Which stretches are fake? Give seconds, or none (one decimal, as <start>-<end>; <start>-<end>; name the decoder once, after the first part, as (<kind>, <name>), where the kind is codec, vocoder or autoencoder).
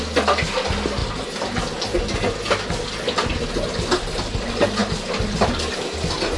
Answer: none